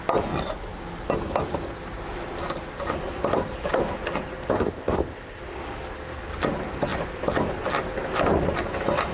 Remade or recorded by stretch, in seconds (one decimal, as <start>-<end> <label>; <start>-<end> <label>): 0.0-4.5 recorded; 4.5-5.4 remade; 5.4-9.1 recorded